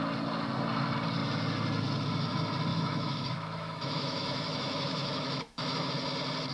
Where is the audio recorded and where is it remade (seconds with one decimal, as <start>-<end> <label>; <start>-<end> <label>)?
0.0-2.7 recorded; 2.7-5.9 remade; 5.9-6.5 recorded